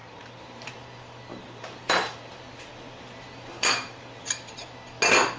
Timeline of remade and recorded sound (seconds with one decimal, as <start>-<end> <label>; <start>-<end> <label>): 0.0-0.7 remade; 0.7-1.3 recorded; 1.3-4.5 remade; 4.5-5.4 recorded